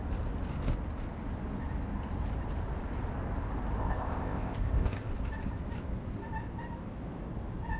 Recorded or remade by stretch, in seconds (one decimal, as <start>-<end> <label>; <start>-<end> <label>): 0.0-3.8 recorded; 3.8-5.1 remade; 5.1-7.8 recorded